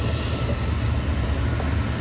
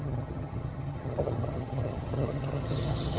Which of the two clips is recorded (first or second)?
first